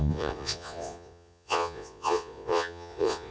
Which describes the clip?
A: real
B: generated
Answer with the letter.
B